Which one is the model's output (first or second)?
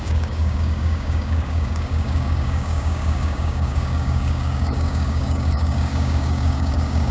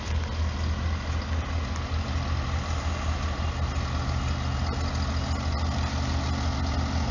first